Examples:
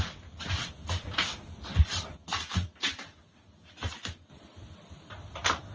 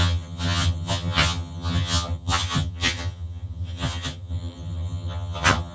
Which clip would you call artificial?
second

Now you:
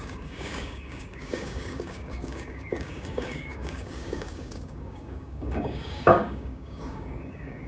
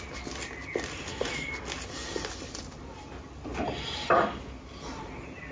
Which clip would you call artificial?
first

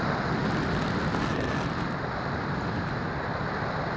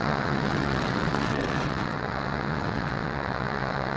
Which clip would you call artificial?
second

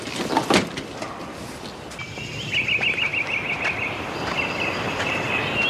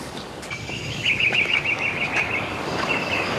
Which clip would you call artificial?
second